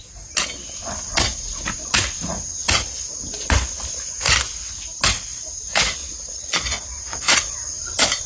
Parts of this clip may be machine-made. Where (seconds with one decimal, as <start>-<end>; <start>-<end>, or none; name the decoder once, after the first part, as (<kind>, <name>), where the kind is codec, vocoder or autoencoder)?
6.0-7.4 (vocoder, Vocos)